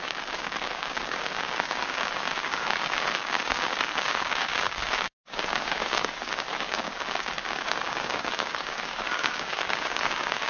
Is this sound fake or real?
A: fake